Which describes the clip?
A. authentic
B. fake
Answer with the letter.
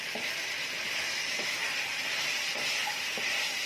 A